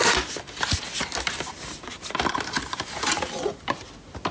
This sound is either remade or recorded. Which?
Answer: recorded